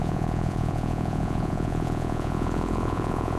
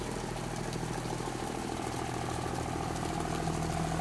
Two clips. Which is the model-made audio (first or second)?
first